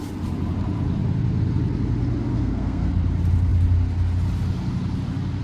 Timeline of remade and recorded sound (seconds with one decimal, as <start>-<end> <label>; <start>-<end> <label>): 0.0-2.3 recorded; 2.3-2.9 remade; 2.9-5.4 recorded